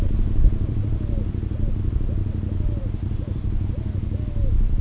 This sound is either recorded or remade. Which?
remade